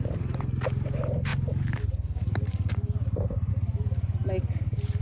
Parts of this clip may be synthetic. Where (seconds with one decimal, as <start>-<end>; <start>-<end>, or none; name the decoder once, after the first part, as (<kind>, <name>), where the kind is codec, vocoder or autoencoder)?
none